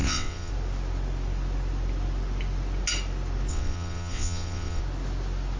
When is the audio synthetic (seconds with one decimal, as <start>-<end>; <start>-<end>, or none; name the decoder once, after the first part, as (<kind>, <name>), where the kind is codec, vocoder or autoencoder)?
0.0-0.5 (vocoder, WaveNeXt); 3.5-4.8